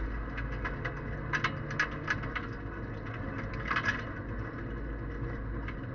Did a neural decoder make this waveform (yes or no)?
no